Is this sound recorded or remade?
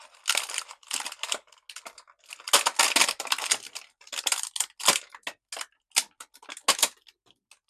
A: recorded